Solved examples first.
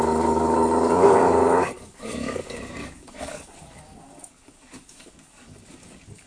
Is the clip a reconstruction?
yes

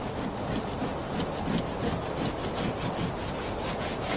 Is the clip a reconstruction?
no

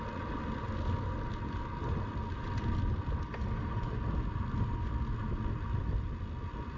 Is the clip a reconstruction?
no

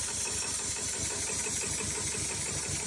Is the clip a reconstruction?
no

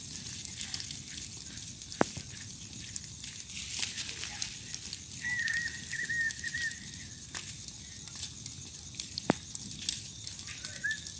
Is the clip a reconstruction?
no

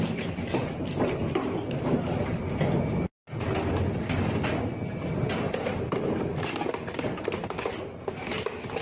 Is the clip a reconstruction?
no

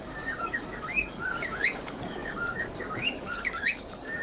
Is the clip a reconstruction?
yes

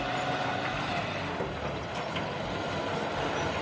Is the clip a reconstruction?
no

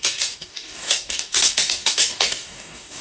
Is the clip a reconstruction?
yes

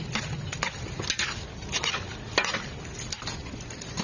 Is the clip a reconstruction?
no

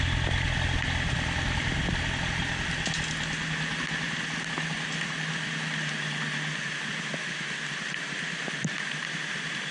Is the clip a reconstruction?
no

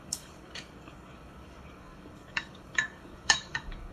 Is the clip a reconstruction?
yes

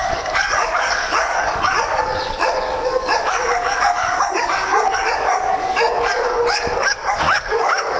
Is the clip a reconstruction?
yes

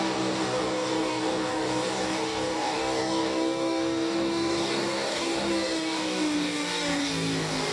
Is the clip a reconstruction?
yes